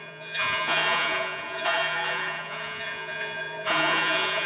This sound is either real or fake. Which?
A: fake